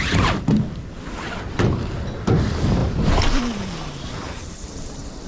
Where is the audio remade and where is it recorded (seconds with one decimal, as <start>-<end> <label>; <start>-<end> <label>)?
0.0-2.8 recorded; 2.8-5.3 remade